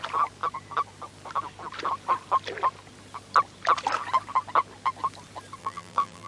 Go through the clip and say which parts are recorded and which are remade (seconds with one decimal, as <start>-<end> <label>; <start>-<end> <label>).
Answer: 0.0-5.6 recorded; 5.6-6.3 remade